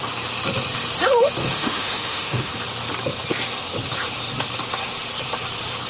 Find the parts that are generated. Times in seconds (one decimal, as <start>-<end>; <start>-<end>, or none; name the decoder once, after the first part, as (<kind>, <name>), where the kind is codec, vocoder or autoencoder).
1.4-2.5 (autoencoder, DAC-VAE)